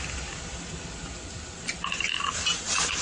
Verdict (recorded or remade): recorded